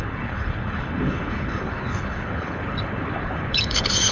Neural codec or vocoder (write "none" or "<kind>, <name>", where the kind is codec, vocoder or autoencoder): codec, HILCodec